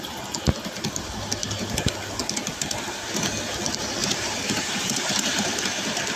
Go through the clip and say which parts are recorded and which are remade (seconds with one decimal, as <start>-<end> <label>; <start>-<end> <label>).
0.0-1.3 recorded; 1.3-1.9 remade; 1.9-4.0 recorded; 4.0-5.5 remade; 5.5-6.2 recorded